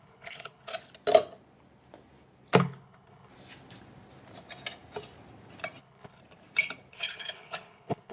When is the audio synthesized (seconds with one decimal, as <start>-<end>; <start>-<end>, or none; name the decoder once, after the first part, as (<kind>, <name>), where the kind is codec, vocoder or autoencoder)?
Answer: 0.0-0.7 (codec, HILCodec); 2.6-3.3; 5.8-6.2; 6.9-8.1